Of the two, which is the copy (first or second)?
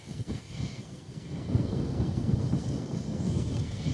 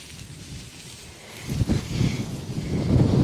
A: first